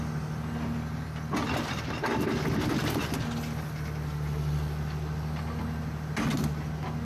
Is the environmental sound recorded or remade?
recorded